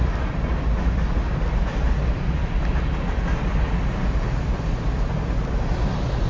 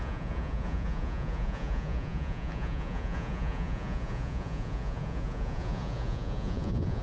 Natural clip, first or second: first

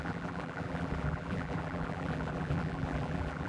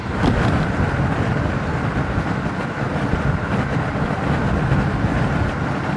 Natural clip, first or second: second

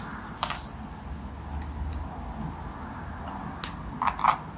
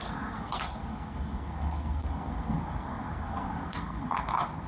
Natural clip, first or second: first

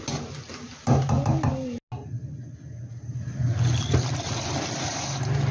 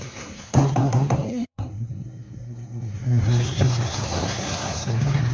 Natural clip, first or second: first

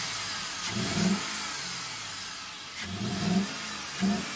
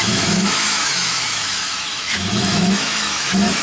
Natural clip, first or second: first